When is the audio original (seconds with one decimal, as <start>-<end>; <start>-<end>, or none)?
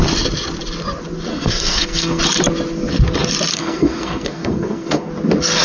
0.0-1.3; 2.2-3.5; 5.1-5.6